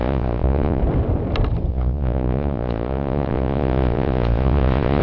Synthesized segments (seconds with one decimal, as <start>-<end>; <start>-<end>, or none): 0.0-0.8; 1.7-5.0